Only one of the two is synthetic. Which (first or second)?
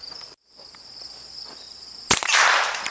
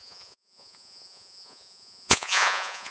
second